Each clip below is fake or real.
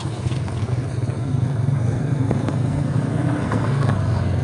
fake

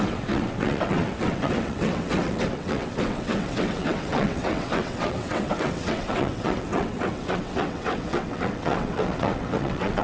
fake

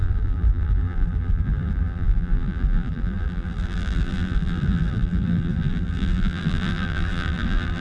fake